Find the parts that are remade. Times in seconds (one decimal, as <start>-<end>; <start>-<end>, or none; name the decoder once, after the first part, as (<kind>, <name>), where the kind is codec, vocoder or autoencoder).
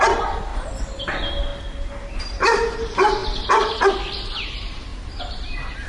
none